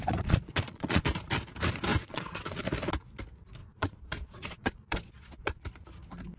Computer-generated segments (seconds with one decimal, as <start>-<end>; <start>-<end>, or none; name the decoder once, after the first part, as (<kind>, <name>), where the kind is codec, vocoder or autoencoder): 0.0-1.1 (vocoder, Vocos); 1.9-2.6; 3.6-5.6